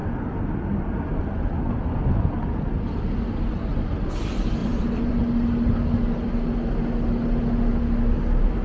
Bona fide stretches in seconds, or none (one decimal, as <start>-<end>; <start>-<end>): 0.0-4.6; 5.2-8.6